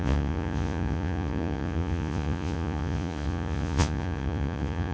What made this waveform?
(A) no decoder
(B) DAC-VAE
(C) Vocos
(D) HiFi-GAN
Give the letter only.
C